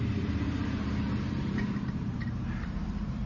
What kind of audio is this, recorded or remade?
remade